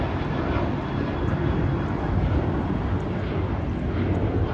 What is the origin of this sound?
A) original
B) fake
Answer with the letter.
A